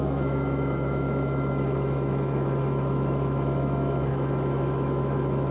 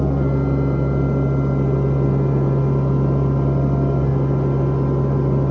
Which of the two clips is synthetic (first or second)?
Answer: first